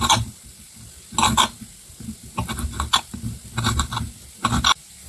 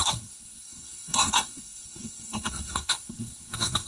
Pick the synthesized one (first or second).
second